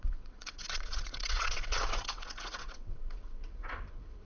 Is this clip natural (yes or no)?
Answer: no